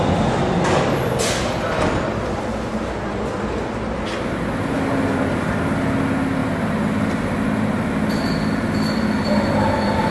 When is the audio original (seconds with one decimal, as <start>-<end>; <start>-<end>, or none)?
0.0-10.1